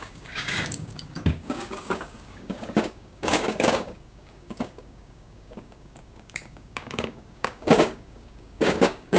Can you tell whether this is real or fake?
fake